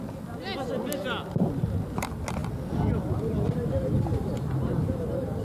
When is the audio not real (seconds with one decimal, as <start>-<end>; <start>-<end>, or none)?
none